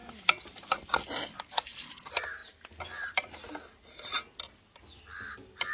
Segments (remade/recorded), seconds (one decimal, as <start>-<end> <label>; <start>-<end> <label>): 0.0-5.7 recorded